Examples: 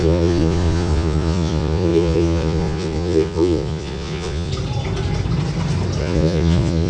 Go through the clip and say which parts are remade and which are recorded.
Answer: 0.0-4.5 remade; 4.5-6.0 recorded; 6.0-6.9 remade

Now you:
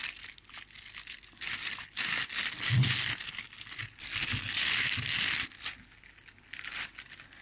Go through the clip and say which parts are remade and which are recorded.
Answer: 0.0-7.4 recorded

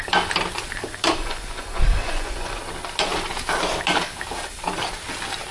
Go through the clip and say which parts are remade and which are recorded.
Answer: 0.0-1.2 recorded; 1.2-2.6 remade; 2.6-5.5 recorded

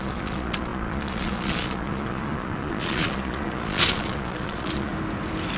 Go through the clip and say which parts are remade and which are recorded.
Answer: 0.0-4.9 remade; 4.9-5.6 recorded

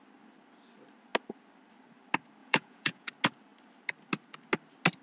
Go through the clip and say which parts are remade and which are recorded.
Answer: 0.0-2.4 recorded; 2.4-3.1 remade; 3.1-5.0 recorded

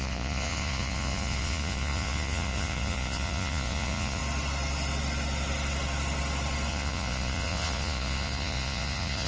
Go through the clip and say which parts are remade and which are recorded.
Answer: 0.0-4.2 remade; 4.2-6.7 recorded; 6.7-9.3 remade

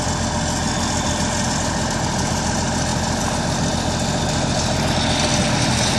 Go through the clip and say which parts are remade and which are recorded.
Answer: 0.0-6.0 recorded

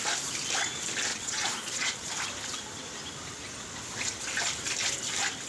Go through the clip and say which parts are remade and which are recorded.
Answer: 0.0-1.1 recorded; 1.1-2.1 remade; 2.1-5.5 recorded